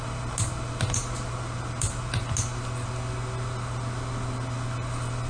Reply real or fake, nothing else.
real